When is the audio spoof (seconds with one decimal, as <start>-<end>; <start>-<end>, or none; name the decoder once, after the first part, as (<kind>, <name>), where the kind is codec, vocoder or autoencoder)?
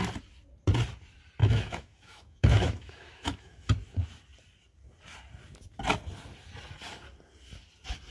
1.4-3.7 (autoencoder, DAC-VAE)